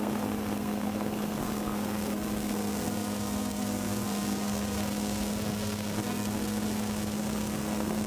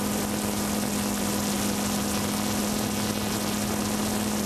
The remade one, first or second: first